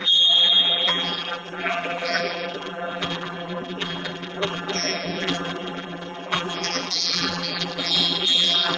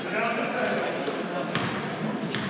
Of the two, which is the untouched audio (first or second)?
second